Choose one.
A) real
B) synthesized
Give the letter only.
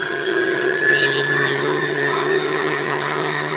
B